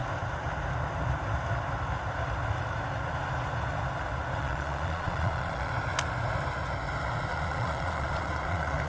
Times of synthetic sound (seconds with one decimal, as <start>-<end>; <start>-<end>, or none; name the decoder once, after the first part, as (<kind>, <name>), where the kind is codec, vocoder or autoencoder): 4.4-5.7 (vocoder, Vocos); 7.3-8.9